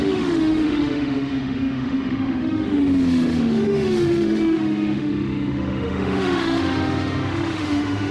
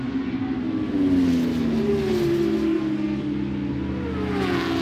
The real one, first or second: second